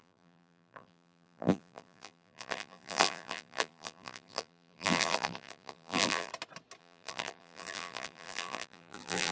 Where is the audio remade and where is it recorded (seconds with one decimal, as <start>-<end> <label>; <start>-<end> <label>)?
0.0-6.3 remade; 6.3-6.8 recorded; 6.8-9.3 remade